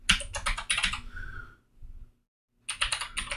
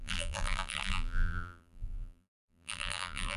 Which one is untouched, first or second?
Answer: first